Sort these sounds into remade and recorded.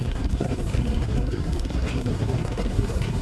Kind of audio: remade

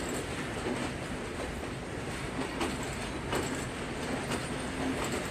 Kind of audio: recorded